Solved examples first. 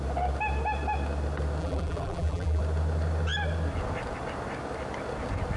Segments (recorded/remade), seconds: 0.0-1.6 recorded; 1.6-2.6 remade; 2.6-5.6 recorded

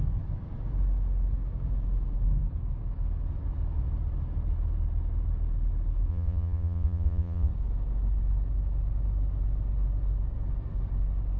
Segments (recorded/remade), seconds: 0.0-6.1 recorded; 6.1-7.5 remade; 7.5-11.4 recorded

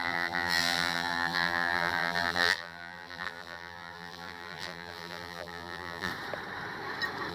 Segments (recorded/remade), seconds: 0.0-6.1 remade; 6.1-7.3 recorded

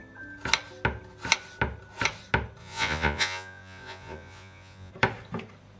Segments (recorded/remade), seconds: 0.0-2.6 recorded; 2.6-4.9 remade; 4.9-5.8 recorded

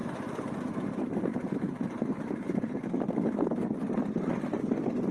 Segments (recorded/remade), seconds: 0.0-3.1 remade; 3.1-5.1 recorded

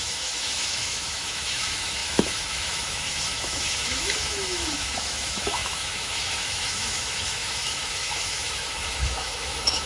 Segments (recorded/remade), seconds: 0.0-9.9 remade